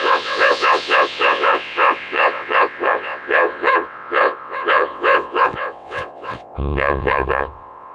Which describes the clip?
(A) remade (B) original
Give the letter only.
A